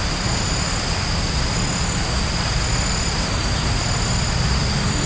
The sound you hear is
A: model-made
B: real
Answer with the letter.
B